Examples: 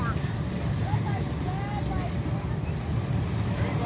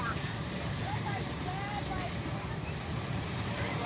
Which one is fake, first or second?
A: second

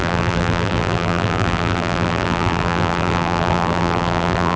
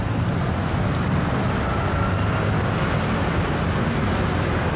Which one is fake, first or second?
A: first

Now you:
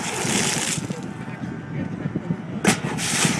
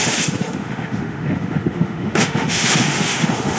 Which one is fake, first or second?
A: second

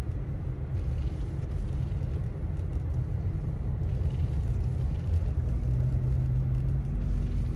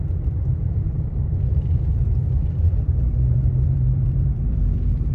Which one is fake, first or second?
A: second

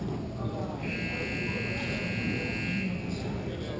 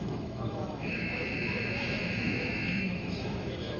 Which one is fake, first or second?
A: second